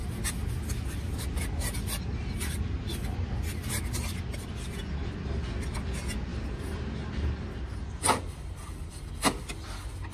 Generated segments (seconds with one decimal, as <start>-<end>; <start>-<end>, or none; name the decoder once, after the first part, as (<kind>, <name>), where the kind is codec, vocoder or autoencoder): 6.3-8.9 (vocoder, BigVGAN v2)